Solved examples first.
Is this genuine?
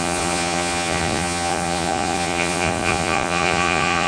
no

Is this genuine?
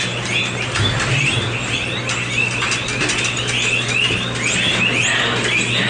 yes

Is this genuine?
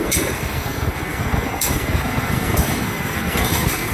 no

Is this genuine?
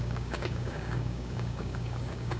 no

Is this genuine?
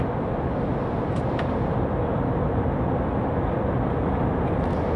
yes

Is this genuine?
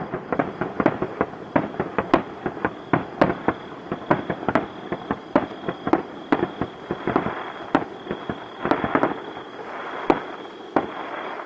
yes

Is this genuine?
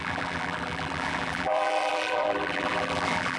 no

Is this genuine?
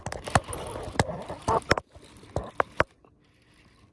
yes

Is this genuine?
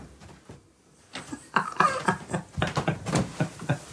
yes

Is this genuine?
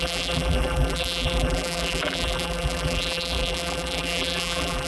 no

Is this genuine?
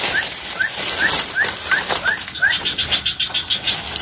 yes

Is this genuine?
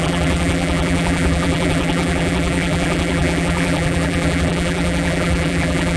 no